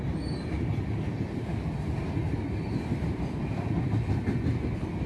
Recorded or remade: recorded